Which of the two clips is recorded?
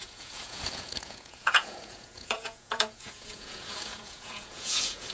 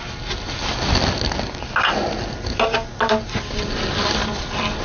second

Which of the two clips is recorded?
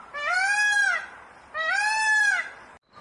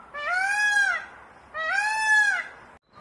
second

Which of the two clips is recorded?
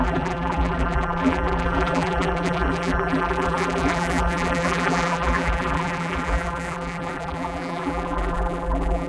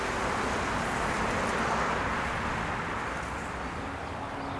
second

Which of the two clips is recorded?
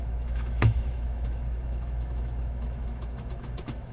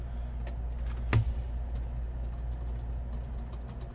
second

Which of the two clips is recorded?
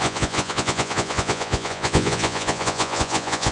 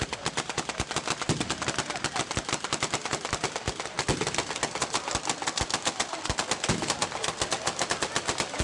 second